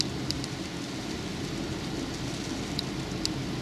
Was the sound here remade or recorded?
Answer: recorded